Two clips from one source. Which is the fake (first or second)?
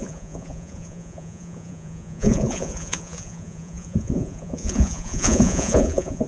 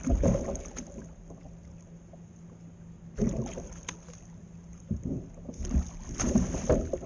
first